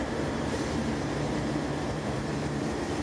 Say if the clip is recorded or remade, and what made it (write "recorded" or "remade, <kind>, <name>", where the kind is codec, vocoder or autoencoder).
remade, vocoder, BigVGAN v2